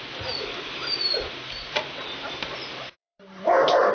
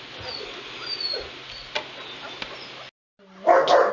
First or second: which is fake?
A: first